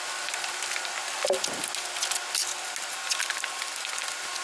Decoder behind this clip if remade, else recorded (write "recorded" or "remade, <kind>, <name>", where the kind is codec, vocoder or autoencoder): recorded